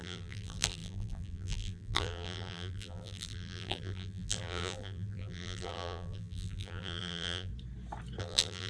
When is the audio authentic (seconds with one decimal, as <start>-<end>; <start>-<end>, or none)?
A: 7.5-8.2